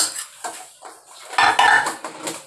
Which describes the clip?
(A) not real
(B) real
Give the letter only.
B